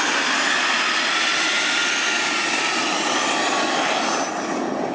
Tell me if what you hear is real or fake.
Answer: real